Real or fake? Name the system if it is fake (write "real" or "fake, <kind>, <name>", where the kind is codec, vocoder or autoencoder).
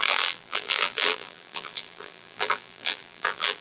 fake, vocoder, BigVGAN v2